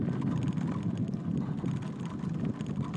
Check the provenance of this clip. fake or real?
real